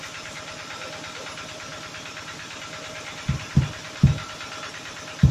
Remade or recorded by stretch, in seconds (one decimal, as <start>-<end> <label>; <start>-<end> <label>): 0.0-5.3 recorded